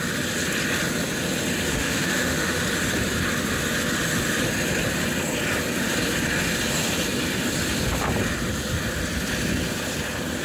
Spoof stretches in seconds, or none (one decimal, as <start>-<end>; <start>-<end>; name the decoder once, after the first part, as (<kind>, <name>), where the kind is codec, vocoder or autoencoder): 1.7-2.6 (autoencoder, DAC-VAE)